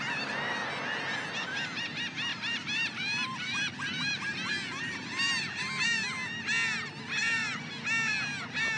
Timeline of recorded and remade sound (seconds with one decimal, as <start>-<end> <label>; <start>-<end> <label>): 0.0-2.3 recorded; 2.3-4.5 remade; 4.5-7.2 recorded; 7.2-7.7 remade; 7.7-8.8 recorded